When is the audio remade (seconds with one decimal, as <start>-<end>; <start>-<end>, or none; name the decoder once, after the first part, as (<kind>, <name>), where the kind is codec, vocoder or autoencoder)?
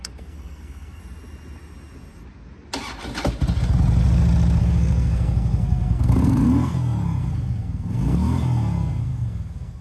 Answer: 0.0-1.0 (codec, SNAC); 4.6-9.8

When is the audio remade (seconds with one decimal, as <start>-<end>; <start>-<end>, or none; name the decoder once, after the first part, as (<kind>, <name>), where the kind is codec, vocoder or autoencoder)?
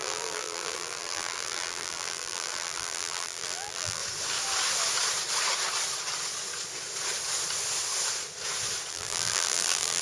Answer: 0.0-4.0 (vocoder, BigVGAN v2); 8.9-10.0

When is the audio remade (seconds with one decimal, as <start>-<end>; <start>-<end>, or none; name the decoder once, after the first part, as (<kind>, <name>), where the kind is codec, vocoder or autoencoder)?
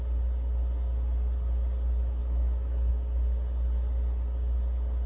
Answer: 2.2-2.9 (autoencoder, DAC-VAE)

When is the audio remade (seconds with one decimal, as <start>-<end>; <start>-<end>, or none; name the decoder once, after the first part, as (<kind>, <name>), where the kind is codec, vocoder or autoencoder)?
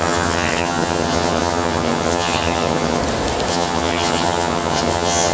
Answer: 0.0-3.0 (vocoder, HiFi-GAN); 3.5-5.3